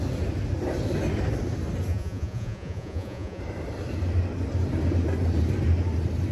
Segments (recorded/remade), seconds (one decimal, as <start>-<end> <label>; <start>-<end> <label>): 0.0-1.9 recorded; 1.9-3.4 remade; 3.4-6.3 recorded